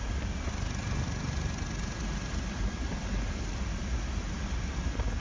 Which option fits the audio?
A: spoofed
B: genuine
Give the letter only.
B